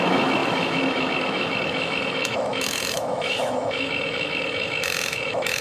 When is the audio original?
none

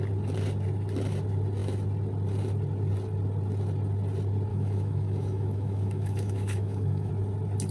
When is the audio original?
0.0-4.5; 7.1-7.7

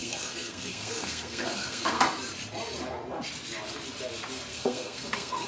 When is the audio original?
2.0-4.5